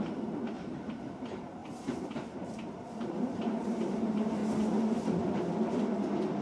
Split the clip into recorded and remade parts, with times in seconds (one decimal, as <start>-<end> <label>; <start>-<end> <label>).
0.0-4.4 remade; 4.4-6.4 recorded